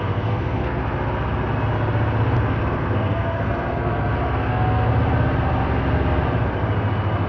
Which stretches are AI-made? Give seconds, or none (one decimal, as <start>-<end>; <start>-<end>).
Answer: 0.0-0.8; 2.5-4.9